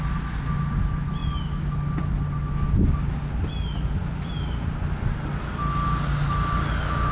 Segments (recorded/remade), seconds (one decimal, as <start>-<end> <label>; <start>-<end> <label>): 0.0-7.1 recorded